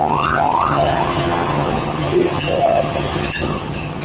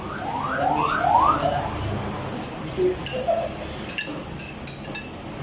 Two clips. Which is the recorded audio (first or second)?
second